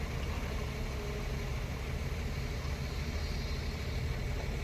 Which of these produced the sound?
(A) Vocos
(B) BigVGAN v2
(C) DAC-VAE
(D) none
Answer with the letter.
D